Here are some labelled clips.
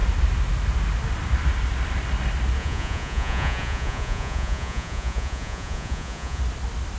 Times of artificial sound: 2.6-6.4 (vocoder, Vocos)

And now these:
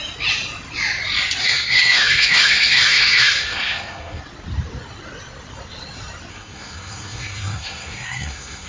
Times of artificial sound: 1.4-4.2 (codec, SNAC); 6.3-8.7

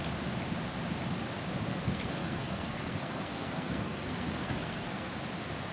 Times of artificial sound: 1.7-5.1 (codec, SNAC)

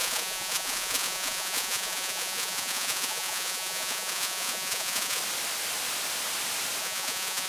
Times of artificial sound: 0.0-5.2 (vocoder, Vocos); 6.8-7.5

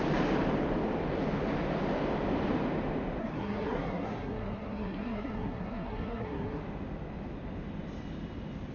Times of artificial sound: 3.2-6.6 (codec, SNAC)

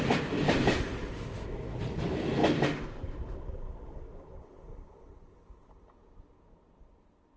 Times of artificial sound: none

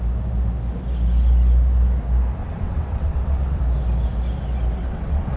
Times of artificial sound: 2.4-3.6 (vocoder, WaveNeXt); 4.8-5.4

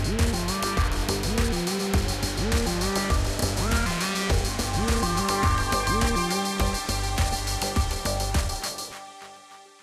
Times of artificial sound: 3.4-5.2 (vocoder, Vocos)